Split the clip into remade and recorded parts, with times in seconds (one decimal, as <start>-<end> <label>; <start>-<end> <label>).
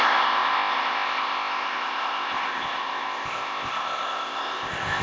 0.0-5.0 remade